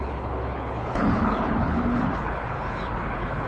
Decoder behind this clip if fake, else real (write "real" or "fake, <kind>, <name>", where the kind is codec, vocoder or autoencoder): fake, codec, HILCodec